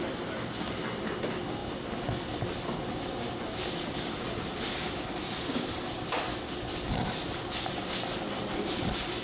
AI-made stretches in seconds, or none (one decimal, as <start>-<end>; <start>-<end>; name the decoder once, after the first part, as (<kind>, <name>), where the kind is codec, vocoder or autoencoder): none